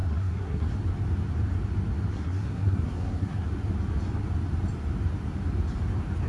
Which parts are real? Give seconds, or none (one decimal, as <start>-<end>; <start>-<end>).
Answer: 0.7-2.1; 3.5-6.3

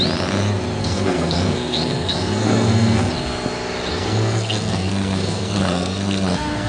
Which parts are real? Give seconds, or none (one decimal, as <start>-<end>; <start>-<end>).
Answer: 0.0-0.8; 3.1-3.9

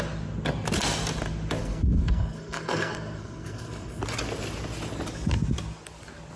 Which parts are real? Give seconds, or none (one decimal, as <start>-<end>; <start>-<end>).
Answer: 0.0-1.6; 4.0-6.4

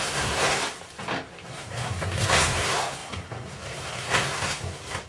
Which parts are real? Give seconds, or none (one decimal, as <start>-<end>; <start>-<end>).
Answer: 0.6-1.5

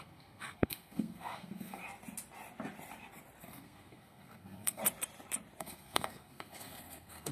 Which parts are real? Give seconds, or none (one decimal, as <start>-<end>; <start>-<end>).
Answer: 1.8-3.4; 4.8-5.6

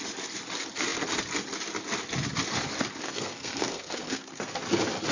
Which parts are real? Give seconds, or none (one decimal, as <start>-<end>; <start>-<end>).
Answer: 0.0-3.0; 4.5-5.1

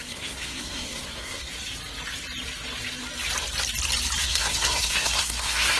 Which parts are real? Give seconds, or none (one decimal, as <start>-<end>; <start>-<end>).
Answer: 1.5-4.2